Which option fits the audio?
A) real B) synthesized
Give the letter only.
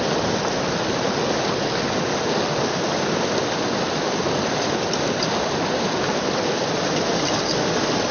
A